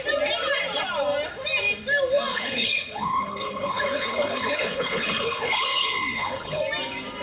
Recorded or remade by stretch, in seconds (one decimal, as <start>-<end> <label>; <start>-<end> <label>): 0.0-2.3 recorded; 2.3-6.6 remade; 6.6-7.2 recorded